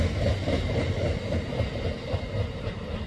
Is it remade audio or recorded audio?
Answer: recorded